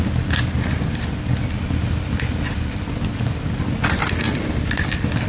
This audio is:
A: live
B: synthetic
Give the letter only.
A